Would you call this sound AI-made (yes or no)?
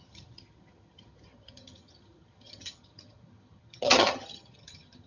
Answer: yes